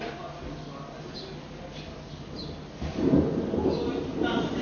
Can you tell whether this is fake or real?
real